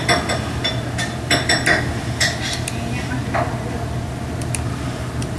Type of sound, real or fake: real